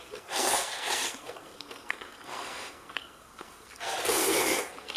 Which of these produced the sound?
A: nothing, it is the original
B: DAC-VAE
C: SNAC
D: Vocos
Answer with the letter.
C